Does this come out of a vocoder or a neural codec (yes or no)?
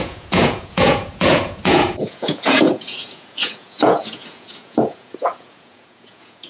yes